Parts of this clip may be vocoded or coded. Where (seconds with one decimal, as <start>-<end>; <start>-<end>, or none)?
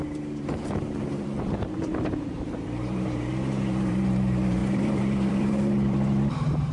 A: 0.0-6.7